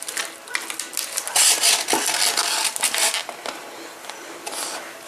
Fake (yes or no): no